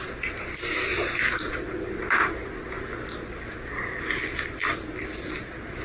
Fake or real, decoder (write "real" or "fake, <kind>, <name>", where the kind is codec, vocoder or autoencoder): real